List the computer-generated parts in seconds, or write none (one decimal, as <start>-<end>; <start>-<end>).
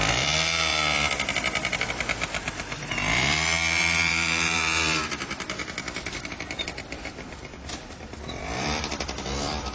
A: 0.0-9.7